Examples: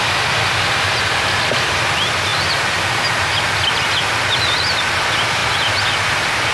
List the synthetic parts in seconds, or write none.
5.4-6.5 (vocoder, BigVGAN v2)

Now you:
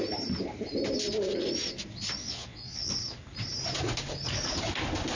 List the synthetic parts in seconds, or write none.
2.2-2.9 (vocoder, Vocos)

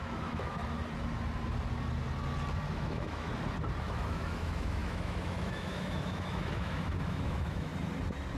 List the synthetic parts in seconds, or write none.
0.0-0.6 (autoencoder, DAC-VAE); 2.7-3.3; 3.8-7.7

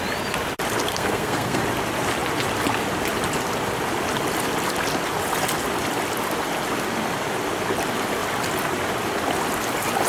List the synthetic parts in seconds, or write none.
0.9-1.6 (codec, SNAC)

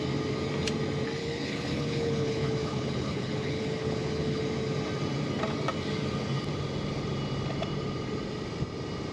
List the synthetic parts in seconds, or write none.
1.2-4.4 (codec, HILCodec)

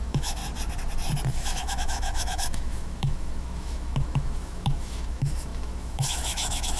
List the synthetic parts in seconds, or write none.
0.0-0.4 (autoencoder, DAC-VAE); 1.3-6.8

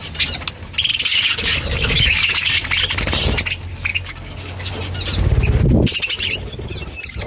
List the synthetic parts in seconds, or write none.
0.9-2.5 (codec, DAC); 3.9-4.7

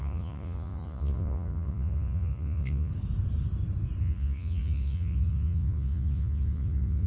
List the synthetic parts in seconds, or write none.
0.0-2.9 (vocoder, Vocos); 4.0-7.1